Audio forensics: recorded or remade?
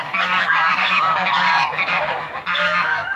remade